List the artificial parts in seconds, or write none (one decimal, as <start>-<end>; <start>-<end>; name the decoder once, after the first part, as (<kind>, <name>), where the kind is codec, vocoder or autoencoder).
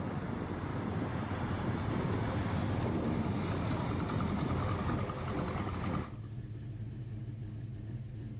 none